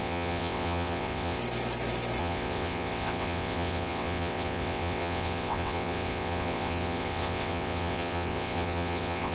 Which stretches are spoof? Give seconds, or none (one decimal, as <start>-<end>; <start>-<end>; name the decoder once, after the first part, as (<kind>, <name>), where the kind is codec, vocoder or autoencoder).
0.0-1.4 (vocoder, WaveNeXt); 2.2-9.3